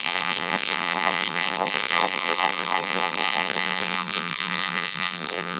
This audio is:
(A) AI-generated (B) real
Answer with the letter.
A